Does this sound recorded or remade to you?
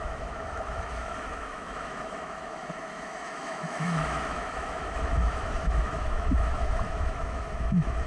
remade